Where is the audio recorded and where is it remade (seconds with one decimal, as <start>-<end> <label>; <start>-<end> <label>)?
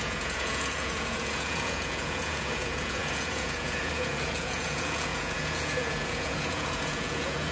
0.0-7.5 remade